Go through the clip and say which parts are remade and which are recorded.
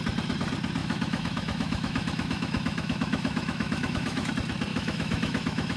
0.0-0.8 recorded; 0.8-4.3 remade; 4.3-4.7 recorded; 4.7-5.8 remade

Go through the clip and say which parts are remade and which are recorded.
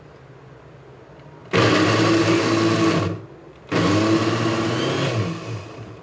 0.0-6.0 recorded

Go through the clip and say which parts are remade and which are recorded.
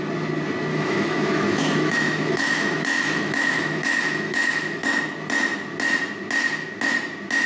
0.0-0.7 recorded; 0.7-5.0 remade; 5.0-7.5 recorded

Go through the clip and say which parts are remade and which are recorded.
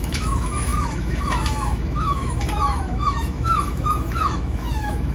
0.0-5.1 remade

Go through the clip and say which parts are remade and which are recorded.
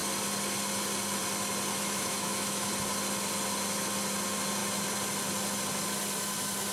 0.0-1.7 recorded; 1.7-2.7 remade; 2.7-6.7 recorded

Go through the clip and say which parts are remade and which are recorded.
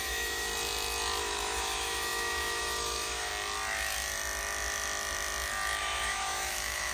0.0-0.5 remade; 0.5-1.2 recorded; 1.2-3.3 remade; 3.3-5.8 recorded; 5.8-6.9 remade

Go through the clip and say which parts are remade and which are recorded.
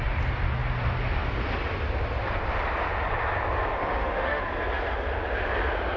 0.0-3.8 recorded; 3.8-4.4 remade; 4.4-6.0 recorded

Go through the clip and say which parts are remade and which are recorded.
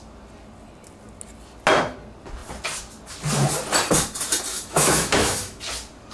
0.0-4.5 recorded; 4.5-5.6 remade; 5.6-6.1 recorded